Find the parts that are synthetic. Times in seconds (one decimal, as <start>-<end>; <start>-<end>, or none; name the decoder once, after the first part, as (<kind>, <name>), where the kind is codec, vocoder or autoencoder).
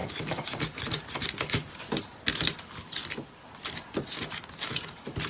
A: none